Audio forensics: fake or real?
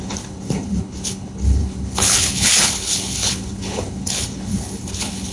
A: fake